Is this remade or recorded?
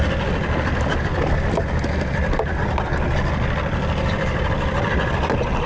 recorded